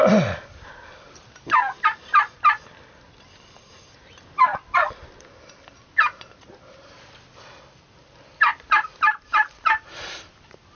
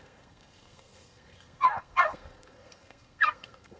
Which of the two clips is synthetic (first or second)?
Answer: second